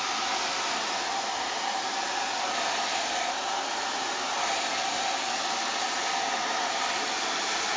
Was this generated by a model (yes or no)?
no